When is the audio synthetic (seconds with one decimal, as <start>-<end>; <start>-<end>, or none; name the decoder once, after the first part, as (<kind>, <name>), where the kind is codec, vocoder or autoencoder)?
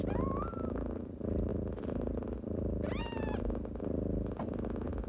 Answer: none